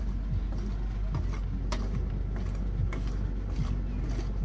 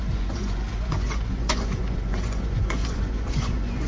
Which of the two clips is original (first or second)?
first